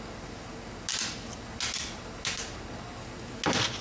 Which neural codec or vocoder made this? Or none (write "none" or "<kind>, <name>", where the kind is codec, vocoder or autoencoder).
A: none